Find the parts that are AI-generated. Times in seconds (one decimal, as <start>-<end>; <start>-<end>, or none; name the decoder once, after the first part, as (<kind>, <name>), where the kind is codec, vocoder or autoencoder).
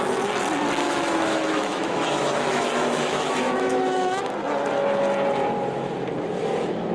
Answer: 0.8-4.2 (autoencoder, DAC-VAE)